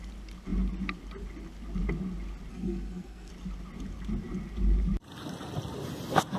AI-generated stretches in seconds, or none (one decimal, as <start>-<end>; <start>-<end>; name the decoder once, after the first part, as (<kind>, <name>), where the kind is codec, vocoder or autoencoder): 2.5-3.3 (codec, SNAC)